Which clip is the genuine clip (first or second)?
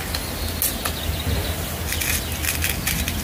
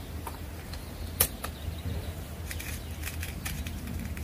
first